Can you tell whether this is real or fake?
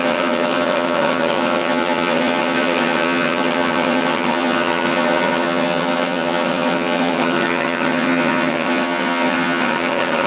fake